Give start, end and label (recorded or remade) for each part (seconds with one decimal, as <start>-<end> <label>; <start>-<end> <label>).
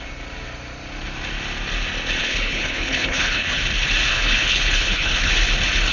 0.0-2.2 recorded; 2.2-3.6 remade; 3.6-4.1 recorded; 4.1-5.3 remade; 5.3-5.9 recorded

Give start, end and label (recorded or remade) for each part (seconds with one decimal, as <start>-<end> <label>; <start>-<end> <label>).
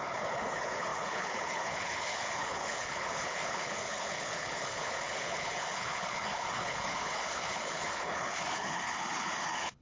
0.0-9.8 remade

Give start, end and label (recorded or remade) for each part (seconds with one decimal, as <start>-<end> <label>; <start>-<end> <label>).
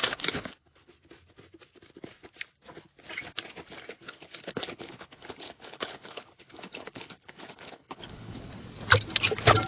0.0-0.9 remade; 0.9-3.9 recorded; 3.9-8.5 remade; 8.5-9.7 recorded